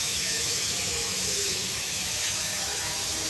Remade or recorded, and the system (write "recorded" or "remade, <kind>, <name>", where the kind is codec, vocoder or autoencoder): remade, autoencoder, DAC-VAE